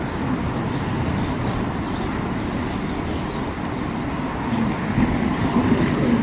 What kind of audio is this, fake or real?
real